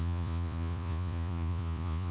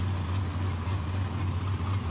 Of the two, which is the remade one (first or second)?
first